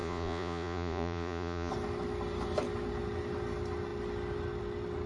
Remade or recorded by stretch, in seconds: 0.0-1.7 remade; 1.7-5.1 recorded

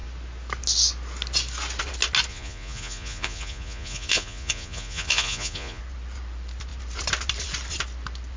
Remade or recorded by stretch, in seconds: 0.0-2.3 recorded; 2.3-5.8 remade; 5.8-8.4 recorded

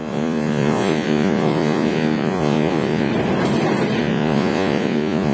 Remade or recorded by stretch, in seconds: 0.0-3.1 remade; 3.1-4.0 recorded; 4.0-5.3 remade

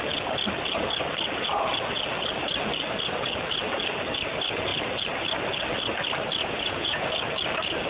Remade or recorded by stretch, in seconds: 0.0-6.4 recorded; 6.4-7.1 remade; 7.1-7.9 recorded

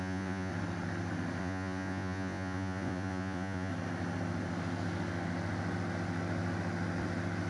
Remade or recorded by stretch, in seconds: 0.0-0.5 remade; 0.5-1.4 recorded; 1.4-3.7 remade; 3.7-7.5 recorded

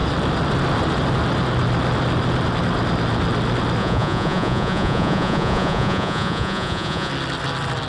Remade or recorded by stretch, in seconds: 0.0-3.8 recorded; 3.8-7.1 remade; 7.1-7.9 recorded